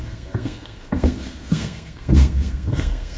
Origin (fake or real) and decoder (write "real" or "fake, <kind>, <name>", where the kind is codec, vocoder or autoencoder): fake, codec, SNAC